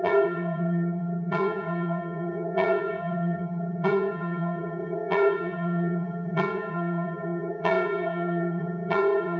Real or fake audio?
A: fake